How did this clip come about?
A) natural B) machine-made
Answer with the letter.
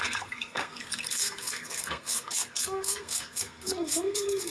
B